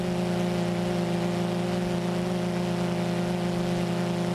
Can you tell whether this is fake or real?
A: real